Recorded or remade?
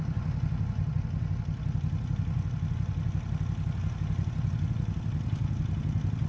recorded